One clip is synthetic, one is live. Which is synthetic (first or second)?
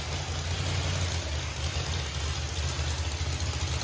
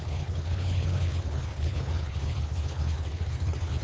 second